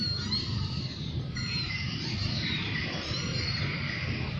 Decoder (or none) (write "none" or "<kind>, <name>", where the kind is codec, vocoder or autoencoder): vocoder, BigVGAN v2